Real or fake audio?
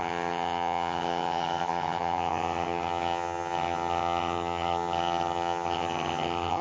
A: fake